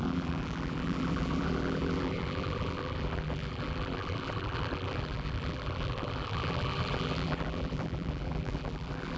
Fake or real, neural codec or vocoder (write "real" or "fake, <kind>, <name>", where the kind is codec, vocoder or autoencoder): fake, vocoder, BigVGAN v2